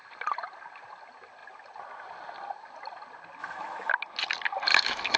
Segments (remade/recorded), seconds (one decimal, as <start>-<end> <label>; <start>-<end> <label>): 0.0-3.4 recorded; 3.4-3.9 remade; 3.9-4.7 recorded; 4.7-5.2 remade